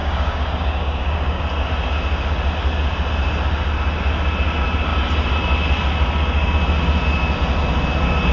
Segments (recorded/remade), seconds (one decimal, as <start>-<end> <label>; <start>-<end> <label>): 0.0-1.4 remade; 1.4-8.3 recorded